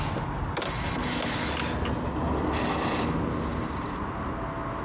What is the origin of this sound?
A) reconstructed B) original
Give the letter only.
B